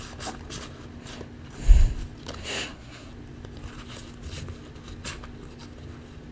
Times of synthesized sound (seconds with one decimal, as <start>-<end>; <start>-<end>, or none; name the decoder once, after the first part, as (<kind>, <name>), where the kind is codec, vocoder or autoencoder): 2.4-3.1 (codec, SNAC)

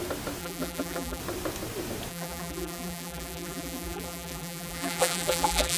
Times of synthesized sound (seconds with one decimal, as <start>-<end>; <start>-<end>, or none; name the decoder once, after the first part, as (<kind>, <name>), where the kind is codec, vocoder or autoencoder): 0.4-1.2 (vocoder, BigVGAN v2); 2.1-5.8

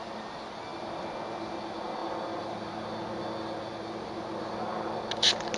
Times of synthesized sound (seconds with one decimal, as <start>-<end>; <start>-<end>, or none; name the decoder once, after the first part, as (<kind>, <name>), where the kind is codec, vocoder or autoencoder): none

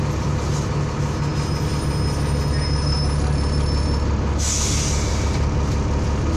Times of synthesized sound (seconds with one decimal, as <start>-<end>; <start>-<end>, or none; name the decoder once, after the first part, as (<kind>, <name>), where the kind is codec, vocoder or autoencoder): none